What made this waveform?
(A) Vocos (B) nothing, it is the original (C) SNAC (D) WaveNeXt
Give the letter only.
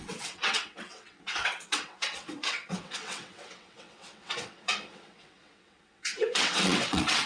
D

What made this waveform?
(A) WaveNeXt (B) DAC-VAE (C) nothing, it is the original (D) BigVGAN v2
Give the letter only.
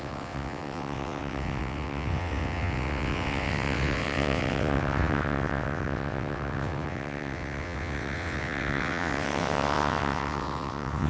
A